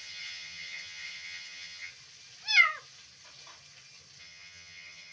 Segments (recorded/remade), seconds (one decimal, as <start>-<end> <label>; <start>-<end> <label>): 0.0-1.9 remade; 1.9-4.2 recorded; 4.2-5.1 remade